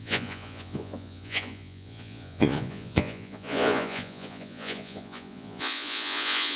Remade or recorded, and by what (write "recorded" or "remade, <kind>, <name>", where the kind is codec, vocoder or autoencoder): remade, vocoder, Vocos